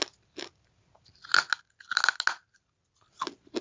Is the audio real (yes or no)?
yes